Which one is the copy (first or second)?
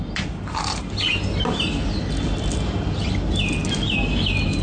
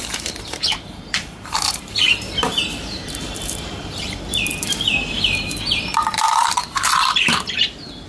second